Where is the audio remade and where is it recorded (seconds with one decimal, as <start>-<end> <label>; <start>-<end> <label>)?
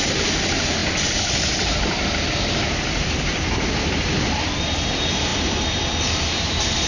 0.0-6.9 remade